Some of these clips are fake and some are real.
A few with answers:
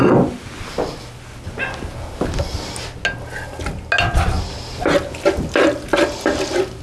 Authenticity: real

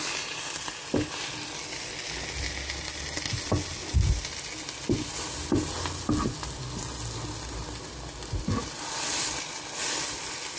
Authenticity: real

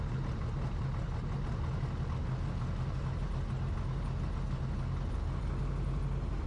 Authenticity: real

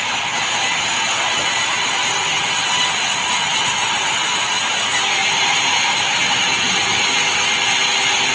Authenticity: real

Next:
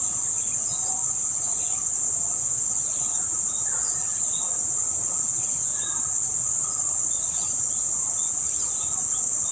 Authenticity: fake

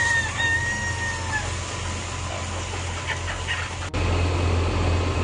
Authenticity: real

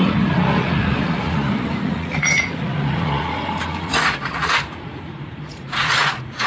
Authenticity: fake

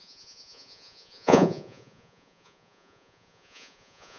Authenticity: fake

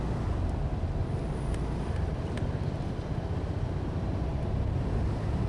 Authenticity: real